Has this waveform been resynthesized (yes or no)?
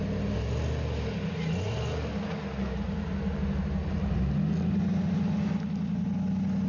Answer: no